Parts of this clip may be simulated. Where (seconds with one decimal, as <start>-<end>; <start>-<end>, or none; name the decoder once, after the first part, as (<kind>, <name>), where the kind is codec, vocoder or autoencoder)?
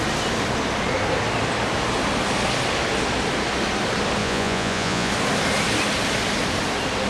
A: 4.2-5.1 (vocoder, Vocos)